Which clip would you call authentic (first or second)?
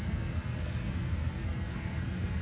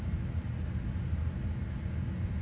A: second